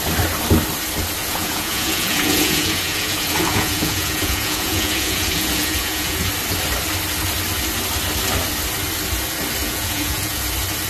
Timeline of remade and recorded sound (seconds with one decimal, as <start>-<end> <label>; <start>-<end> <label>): 0.0-1.2 recorded; 1.2-6.3 remade; 6.3-9.6 recorded; 9.6-10.4 remade; 10.4-10.9 recorded